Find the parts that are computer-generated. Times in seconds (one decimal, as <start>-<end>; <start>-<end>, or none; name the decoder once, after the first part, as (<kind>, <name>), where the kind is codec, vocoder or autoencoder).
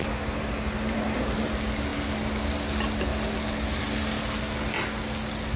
none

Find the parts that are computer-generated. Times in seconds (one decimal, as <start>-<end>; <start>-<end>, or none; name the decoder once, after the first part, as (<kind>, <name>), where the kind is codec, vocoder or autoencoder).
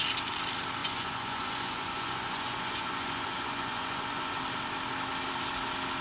0.8-4.4 (vocoder, Vocos)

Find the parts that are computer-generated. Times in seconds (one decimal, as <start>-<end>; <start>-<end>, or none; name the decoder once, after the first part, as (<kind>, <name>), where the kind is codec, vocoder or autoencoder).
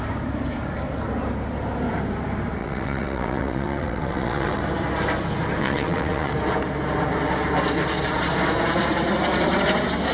2.6-4.6 (vocoder, WaveNeXt); 5.6-6.3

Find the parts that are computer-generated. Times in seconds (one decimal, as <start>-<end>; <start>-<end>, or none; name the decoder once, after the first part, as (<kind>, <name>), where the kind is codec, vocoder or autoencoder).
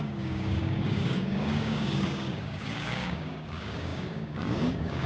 0.0-5.1 (codec, DAC)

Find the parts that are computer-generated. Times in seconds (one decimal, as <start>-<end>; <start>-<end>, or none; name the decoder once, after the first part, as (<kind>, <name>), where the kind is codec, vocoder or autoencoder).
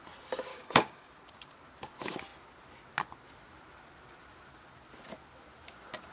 0.5-1.1 (codec, DAC)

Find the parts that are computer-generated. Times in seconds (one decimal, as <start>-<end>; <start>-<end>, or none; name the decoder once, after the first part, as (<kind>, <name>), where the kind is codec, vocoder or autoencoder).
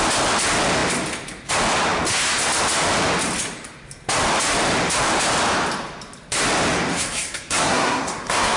6.9-8.6 (codec, SNAC)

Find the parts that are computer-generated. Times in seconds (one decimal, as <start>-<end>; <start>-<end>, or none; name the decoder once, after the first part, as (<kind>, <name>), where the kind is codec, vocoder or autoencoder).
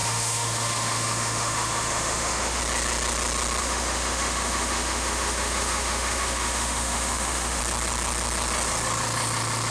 0.0-2.6 (autoencoder, DAC-VAE); 3.6-7.6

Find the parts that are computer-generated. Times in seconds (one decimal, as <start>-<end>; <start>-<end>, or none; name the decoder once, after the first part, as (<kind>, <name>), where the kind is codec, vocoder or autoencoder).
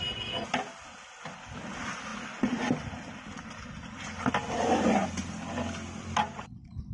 none